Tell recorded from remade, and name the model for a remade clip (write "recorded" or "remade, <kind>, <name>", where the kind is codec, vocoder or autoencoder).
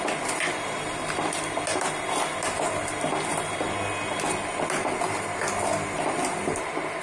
recorded